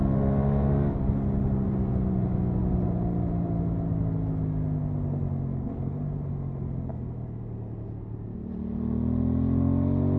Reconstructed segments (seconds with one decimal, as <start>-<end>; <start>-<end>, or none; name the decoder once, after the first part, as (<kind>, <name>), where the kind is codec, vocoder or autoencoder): none